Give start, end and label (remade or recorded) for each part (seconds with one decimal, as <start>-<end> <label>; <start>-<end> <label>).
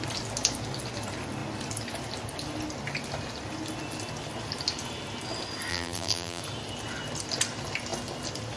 0.0-5.7 recorded; 5.7-6.4 remade; 6.4-8.6 recorded